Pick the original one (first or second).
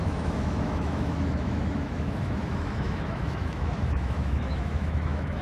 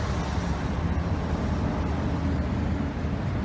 second